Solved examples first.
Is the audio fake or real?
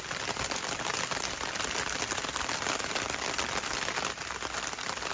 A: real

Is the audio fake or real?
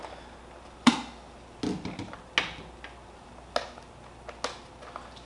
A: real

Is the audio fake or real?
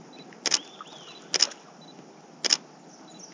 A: real